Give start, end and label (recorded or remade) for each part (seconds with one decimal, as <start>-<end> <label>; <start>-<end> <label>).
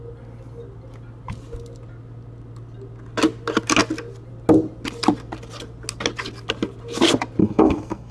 0.0-7.4 recorded; 7.4-8.1 remade